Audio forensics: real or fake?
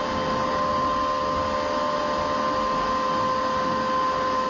real